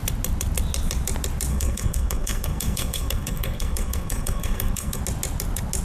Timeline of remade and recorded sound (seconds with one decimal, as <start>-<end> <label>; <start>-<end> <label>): 0.0-1.5 recorded; 1.5-5.0 remade; 5.0-5.8 recorded